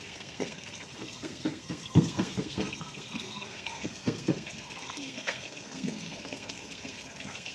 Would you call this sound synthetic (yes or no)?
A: yes